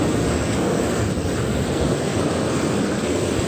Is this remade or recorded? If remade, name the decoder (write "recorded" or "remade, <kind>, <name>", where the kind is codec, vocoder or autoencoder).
remade, codec, SNAC